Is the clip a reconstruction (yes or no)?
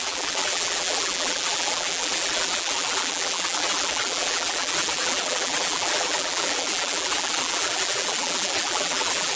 yes